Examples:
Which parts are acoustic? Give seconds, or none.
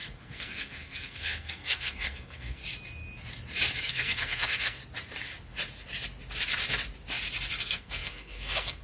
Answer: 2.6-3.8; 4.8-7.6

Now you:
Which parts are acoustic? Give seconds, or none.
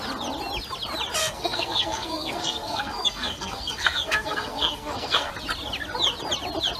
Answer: 0.0-1.2; 5.3-6.8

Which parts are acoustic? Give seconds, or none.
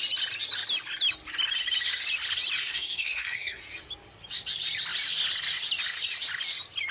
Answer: 0.0-2.6; 3.6-6.9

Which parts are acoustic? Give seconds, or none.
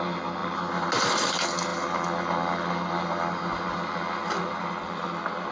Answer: 0.0-5.5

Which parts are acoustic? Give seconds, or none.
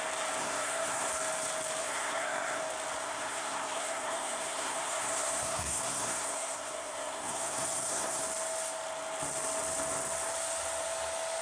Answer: 0.0-0.4; 1.1-1.8; 2.6-3.0; 8.2-11.4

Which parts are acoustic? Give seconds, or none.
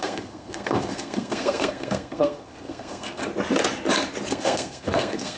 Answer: 3.2-4.3